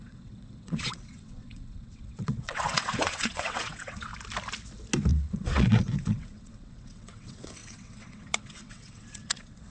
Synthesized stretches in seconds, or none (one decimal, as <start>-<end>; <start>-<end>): 0.0-4.1; 5.1-9.7